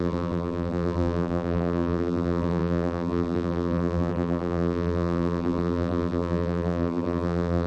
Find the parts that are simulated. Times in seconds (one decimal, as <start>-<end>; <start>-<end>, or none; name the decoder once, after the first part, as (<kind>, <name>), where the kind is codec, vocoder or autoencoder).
0.0-7.7 (vocoder, BigVGAN v2)